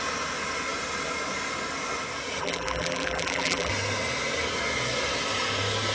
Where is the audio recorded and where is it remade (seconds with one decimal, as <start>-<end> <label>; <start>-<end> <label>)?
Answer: 0.0-2.4 recorded; 2.4-3.7 remade; 3.7-5.9 recorded